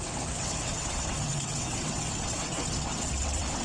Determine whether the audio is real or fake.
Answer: fake